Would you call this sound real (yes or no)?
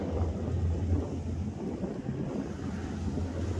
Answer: yes